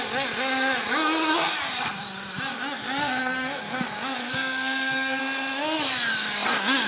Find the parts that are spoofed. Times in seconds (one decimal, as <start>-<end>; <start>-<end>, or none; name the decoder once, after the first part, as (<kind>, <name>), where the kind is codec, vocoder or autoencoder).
3.0-3.8 (codec, SNAC); 4.2-5.2